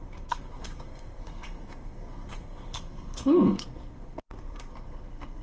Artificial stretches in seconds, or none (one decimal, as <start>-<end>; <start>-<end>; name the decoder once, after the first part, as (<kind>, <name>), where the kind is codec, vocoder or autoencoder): 0.0-5.4 (codec, SNAC)